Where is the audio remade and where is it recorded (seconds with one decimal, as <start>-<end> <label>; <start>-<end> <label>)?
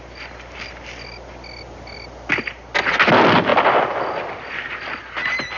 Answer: 0.0-5.6 recorded